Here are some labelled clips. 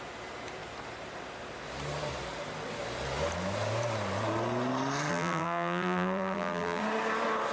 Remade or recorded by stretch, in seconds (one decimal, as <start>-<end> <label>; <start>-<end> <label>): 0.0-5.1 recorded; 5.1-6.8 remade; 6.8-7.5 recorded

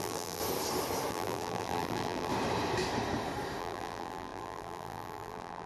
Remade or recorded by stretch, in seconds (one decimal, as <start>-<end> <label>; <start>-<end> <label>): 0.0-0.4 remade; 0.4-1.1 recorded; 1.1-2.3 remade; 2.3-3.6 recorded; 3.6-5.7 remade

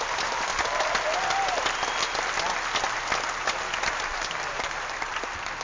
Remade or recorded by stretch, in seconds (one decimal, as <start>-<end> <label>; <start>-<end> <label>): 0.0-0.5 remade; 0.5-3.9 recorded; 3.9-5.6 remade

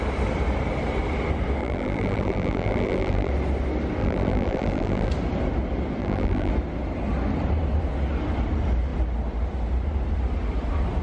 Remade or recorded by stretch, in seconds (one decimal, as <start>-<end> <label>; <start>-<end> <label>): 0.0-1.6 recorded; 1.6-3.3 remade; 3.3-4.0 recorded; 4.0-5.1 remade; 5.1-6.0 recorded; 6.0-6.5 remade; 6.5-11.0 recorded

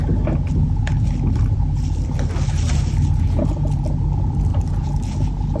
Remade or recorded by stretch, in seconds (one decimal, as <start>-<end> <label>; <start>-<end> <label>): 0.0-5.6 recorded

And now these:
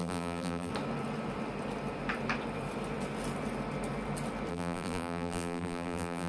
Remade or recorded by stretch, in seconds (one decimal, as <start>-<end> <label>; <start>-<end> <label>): 0.0-0.7 remade; 0.7-4.5 recorded; 4.5-6.3 remade

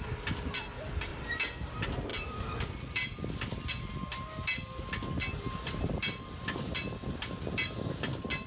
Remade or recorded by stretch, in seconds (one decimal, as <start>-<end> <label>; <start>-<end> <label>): 0.0-1.1 recorded; 1.1-1.7 remade; 1.7-2.1 recorded; 2.1-3.9 remade; 3.9-8.5 recorded